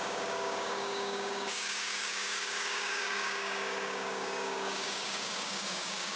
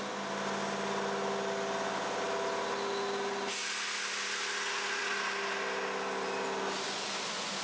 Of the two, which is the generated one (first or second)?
first